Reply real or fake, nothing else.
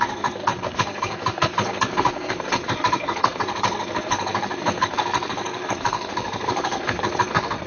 fake